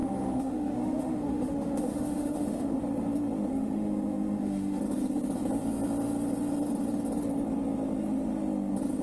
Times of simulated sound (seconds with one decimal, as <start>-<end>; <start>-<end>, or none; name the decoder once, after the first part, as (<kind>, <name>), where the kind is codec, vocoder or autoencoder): 0.0-2.8 (autoencoder, DAC-VAE); 3.5-4.8